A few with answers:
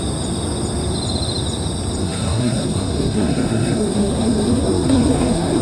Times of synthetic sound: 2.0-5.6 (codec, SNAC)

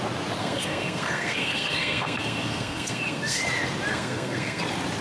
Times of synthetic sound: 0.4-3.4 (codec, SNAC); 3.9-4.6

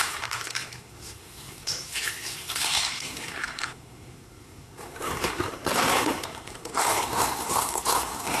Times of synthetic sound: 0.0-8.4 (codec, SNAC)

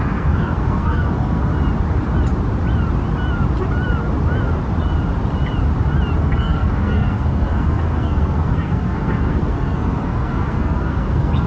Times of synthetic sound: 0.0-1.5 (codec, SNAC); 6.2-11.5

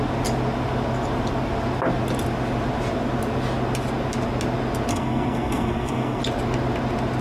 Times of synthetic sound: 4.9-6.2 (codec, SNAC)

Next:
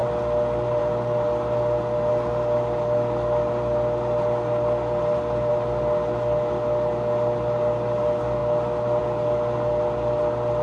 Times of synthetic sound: none